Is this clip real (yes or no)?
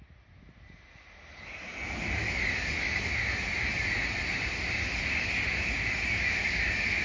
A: yes